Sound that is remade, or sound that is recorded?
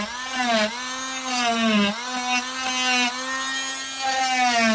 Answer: recorded